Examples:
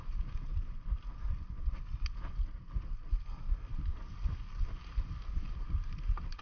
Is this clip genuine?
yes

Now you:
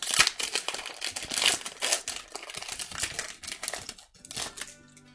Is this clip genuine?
yes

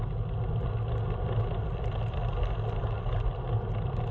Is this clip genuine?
yes